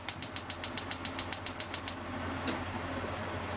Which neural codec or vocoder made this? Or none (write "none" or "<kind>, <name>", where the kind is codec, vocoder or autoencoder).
none